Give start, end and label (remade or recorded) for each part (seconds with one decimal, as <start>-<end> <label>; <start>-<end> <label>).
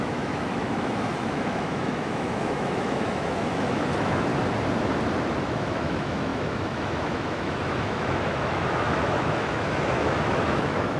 0.0-4.3 remade; 4.3-5.5 recorded; 5.5-11.0 remade